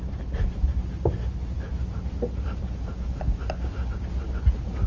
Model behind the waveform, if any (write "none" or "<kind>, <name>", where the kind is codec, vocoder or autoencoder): none